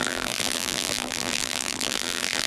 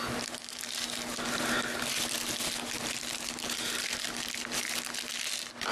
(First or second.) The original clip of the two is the second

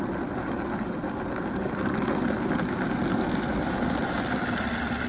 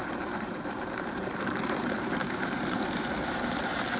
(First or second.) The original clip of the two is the first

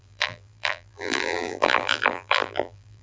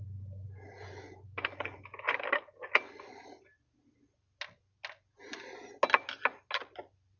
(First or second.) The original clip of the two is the second